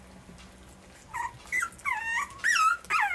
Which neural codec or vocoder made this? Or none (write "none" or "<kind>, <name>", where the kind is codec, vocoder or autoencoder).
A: none